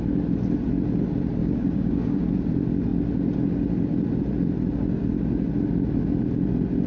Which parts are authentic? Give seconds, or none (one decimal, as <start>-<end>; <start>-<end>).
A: 0.0-1.4; 2.2-6.9